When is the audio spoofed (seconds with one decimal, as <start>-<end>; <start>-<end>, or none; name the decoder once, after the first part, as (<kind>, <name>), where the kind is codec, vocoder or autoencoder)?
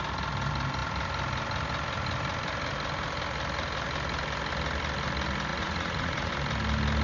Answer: 5.5-6.3 (vocoder, Vocos)